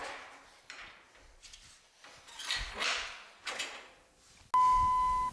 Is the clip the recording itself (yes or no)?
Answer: yes